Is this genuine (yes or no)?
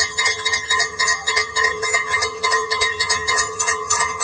no